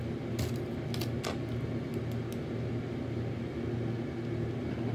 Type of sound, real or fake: real